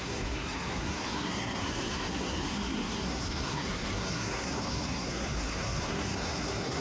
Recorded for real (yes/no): no